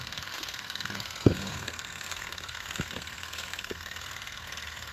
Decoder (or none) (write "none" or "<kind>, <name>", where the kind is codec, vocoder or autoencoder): codec, SNAC